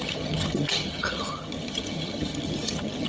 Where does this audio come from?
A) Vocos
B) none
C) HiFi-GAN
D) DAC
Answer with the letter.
C